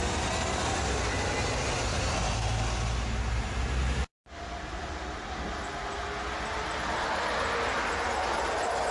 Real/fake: real